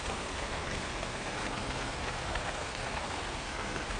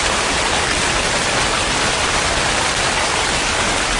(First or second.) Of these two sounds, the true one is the second